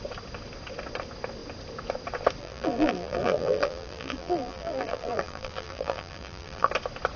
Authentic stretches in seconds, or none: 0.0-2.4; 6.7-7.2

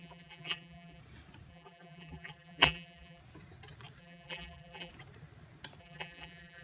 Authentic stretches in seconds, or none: 1.0-1.5; 3.2-4.0; 4.9-5.8